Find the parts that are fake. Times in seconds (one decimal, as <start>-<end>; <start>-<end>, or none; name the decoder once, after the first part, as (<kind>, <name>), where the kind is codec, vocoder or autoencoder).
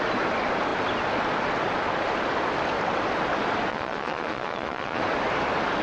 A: 3.7-5.0 (vocoder, Vocos)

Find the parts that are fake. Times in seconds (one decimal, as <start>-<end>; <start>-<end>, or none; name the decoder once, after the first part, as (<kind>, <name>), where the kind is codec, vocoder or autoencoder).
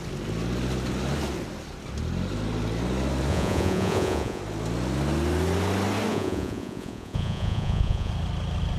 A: 3.3-4.4 (vocoder, Vocos); 6.1-8.1